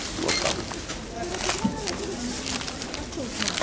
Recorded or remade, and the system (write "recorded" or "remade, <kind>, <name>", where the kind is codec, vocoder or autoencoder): recorded